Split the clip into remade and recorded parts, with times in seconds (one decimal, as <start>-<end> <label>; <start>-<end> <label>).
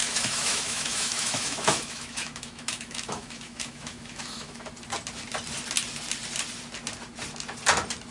0.0-4.7 remade; 4.7-8.1 recorded